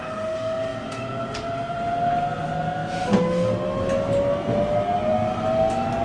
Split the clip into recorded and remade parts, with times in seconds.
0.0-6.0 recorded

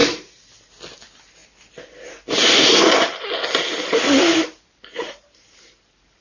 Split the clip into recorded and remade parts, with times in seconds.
0.0-4.3 recorded; 4.3-6.2 remade

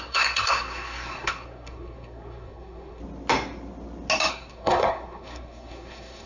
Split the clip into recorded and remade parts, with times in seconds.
0.0-3.0 remade; 3.0-4.3 recorded; 4.3-6.3 remade

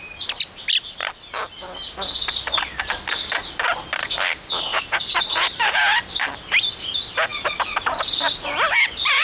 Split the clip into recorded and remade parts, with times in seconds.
0.0-4.7 recorded; 4.7-5.8 remade; 5.8-9.2 recorded

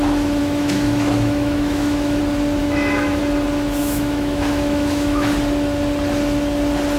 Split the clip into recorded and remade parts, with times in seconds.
0.0-0.4 recorded; 0.4-2.2 remade; 2.2-2.6 recorded; 2.6-3.2 remade; 3.2-3.8 recorded; 3.8-5.3 remade; 5.3-7.0 recorded